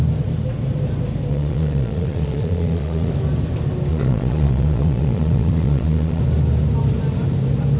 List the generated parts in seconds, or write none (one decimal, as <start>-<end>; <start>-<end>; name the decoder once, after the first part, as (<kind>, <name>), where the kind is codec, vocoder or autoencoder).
1.3-3.1 (vocoder, Vocos); 3.9-6.2